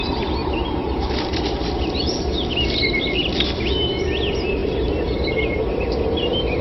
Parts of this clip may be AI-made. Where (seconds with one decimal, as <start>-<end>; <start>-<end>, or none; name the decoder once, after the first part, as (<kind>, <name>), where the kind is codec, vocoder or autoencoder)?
0.4-2.1 (vocoder, BigVGAN v2); 4.6-5.3